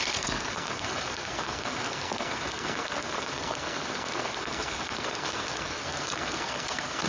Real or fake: fake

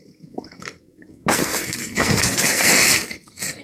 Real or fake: fake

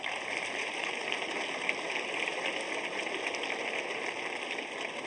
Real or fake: real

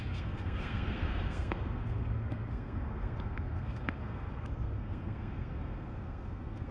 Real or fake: fake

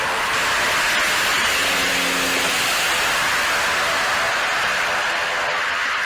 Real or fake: real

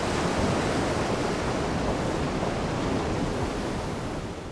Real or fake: real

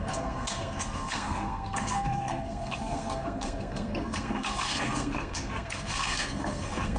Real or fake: fake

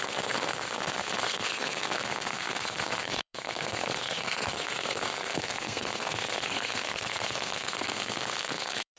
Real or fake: fake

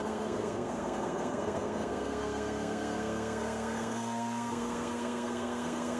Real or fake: fake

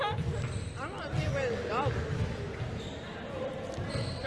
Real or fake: real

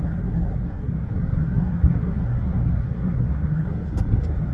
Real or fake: fake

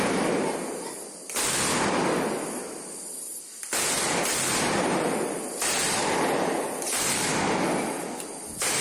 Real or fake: real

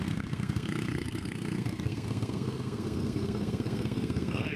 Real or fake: fake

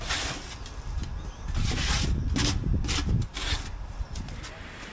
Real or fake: real